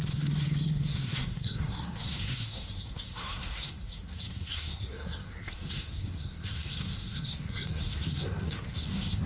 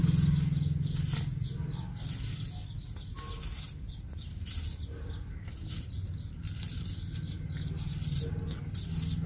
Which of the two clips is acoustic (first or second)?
second